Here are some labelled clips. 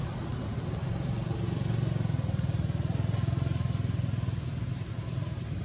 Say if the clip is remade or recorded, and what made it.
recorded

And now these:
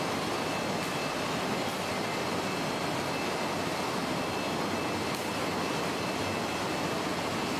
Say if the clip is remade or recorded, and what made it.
recorded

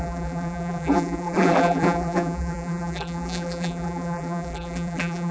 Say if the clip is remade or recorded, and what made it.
remade, vocoder, BigVGAN v2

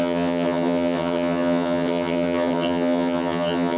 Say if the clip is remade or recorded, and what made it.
remade, vocoder, HiFi-GAN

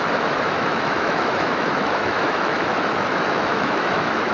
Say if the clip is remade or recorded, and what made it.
remade, autoencoder, DAC-VAE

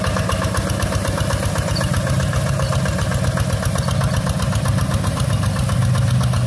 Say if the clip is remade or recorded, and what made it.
recorded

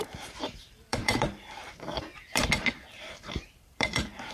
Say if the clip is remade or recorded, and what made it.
remade, vocoder, BigVGAN v2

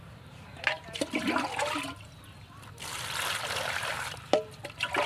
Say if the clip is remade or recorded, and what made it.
recorded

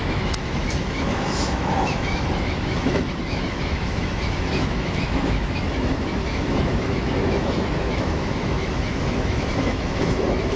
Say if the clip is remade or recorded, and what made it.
remade, autoencoder, DAC-VAE